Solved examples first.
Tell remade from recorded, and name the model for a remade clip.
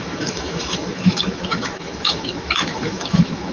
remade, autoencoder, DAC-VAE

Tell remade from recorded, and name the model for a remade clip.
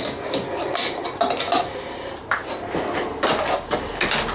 recorded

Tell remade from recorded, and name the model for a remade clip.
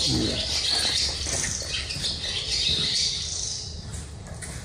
recorded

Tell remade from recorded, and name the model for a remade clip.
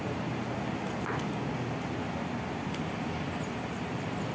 recorded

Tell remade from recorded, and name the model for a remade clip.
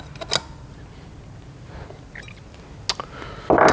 recorded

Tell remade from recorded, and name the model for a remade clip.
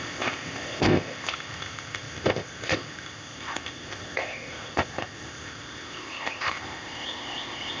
remade, codec, ZipCodec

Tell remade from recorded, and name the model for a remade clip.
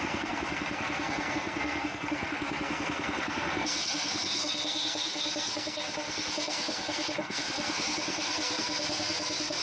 remade, codec, SNAC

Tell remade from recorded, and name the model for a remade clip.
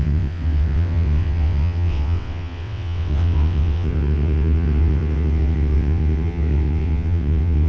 remade, vocoder, WaveNeXt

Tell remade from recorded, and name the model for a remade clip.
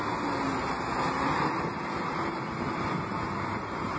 recorded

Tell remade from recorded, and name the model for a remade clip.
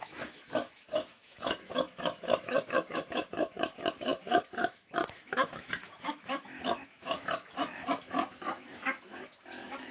remade, autoencoder, DAC-VAE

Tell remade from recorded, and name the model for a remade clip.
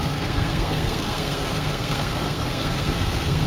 remade, codec, SNAC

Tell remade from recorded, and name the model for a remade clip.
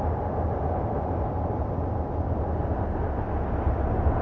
recorded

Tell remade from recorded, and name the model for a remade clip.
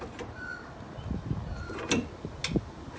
recorded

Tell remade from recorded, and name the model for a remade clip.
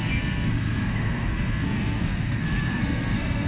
remade, codec, SNAC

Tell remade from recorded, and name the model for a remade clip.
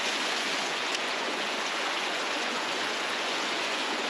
remade, vocoder, Vocos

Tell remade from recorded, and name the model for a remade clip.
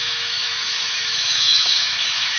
remade, autoencoder, DAC-VAE